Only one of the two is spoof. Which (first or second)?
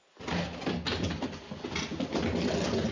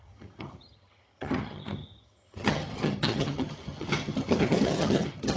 second